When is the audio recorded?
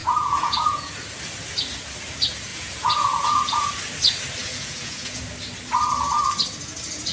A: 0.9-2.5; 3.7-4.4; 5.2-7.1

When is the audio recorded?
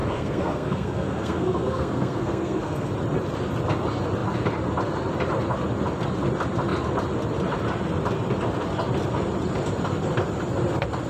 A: 2.9-11.1